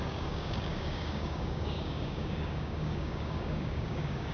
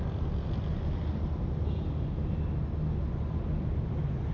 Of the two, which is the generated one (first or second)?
first